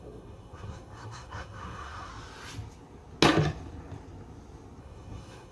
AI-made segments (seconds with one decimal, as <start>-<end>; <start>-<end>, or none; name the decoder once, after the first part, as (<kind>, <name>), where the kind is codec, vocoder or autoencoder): 0.0-2.1 (codec, SNAC); 4.8-5.5